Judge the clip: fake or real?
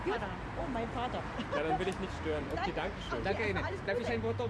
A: real